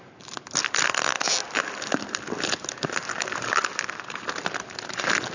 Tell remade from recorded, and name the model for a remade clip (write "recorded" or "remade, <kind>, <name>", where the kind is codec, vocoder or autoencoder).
recorded